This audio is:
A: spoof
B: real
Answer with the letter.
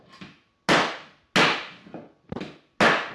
B